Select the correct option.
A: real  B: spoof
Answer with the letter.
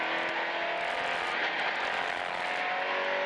A